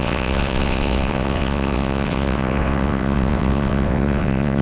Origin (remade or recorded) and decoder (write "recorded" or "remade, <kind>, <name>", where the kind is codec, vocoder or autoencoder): remade, vocoder, WaveNeXt